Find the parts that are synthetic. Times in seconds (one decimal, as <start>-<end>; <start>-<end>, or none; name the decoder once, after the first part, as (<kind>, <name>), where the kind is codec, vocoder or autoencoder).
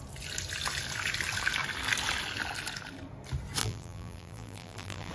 3.6-5.1 (vocoder, BigVGAN v2)